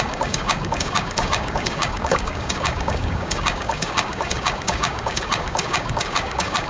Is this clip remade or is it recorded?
remade